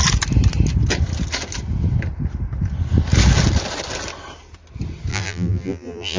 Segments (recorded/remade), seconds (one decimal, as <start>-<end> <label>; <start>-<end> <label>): 0.0-5.1 recorded; 5.1-6.2 remade